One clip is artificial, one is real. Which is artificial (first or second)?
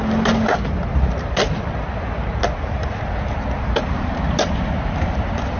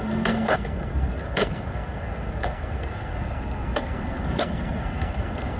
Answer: second